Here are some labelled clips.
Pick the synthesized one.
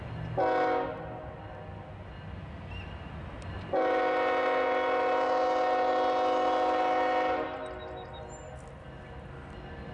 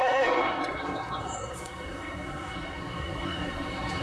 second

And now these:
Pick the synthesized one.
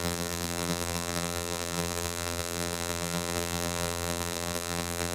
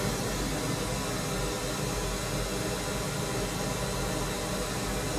first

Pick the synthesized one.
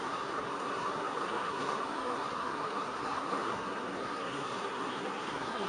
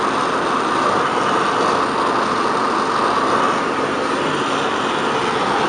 first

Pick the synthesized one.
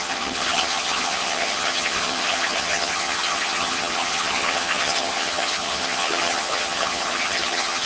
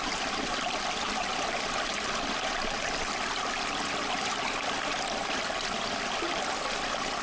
first